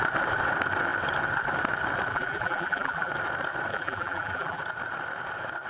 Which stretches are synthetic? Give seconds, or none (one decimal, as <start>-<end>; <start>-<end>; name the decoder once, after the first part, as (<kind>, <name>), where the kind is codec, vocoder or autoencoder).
2.1-3.1 (vocoder, BigVGAN v2); 3.7-4.6